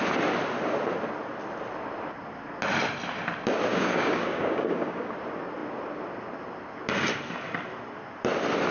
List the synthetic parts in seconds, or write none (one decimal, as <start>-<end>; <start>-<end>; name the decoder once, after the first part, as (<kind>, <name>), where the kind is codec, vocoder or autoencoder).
3.7-5.1 (codec, DAC)